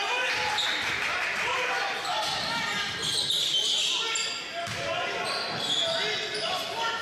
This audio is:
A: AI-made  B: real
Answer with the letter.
B